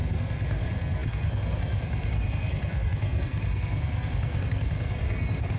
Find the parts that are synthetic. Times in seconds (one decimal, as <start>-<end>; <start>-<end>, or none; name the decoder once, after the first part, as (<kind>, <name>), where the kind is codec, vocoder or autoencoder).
0.0-5.6 (codec, SNAC)